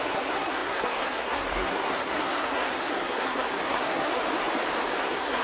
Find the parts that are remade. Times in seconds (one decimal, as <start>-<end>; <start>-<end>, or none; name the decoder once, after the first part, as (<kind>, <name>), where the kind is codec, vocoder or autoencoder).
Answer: 0.0-4.2 (codec, SNAC); 5.0-5.4